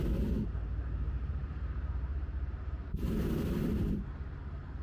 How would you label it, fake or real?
fake